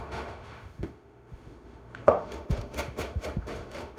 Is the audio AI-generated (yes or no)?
yes